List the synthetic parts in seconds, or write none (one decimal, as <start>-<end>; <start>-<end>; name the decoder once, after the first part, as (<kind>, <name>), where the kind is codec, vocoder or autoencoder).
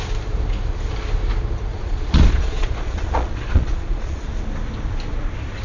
1.7-4.3 (vocoder, Vocos)